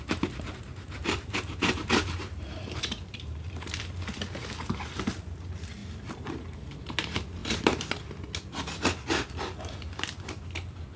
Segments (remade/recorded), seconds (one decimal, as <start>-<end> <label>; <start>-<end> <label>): 0.0-1.0 recorded; 1.0-3.8 remade; 3.8-5.8 recorded; 5.8-6.8 remade; 6.8-7.4 recorded; 7.4-7.9 remade; 7.9-11.0 recorded